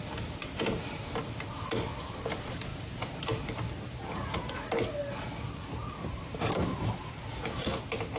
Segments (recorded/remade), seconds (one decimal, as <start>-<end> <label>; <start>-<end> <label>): 0.0-8.2 recorded